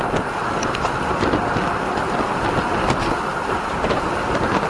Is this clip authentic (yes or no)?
yes